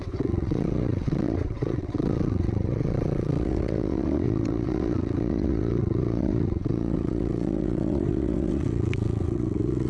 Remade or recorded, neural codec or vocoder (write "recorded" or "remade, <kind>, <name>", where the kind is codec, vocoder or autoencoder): remade, vocoder, WaveNeXt